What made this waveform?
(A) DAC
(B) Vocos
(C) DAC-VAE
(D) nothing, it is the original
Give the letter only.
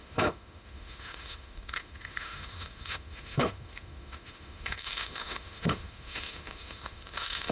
C